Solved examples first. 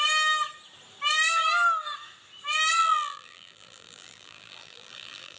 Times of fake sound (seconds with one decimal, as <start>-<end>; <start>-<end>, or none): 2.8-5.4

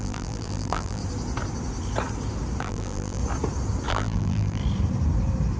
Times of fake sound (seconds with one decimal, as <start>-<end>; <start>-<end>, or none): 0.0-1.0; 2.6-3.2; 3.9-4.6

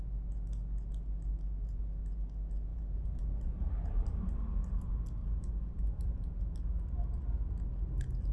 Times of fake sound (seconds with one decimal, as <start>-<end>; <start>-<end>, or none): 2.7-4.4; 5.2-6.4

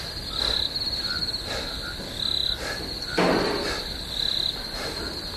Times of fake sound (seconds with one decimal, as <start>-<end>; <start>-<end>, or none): 2.4-2.9; 3.8-5.0

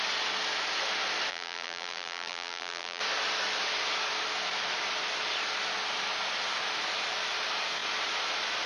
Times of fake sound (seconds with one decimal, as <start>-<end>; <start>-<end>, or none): 1.3-3.0